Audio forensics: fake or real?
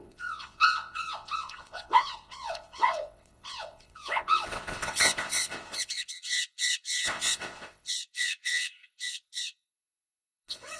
fake